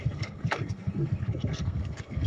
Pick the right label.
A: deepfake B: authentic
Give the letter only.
A